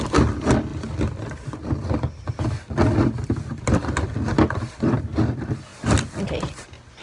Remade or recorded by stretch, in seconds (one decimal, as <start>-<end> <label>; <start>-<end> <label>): 0.0-7.0 recorded